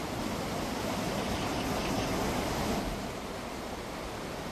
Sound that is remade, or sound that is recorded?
recorded